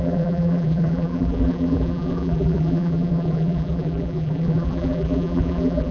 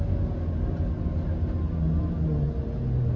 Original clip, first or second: second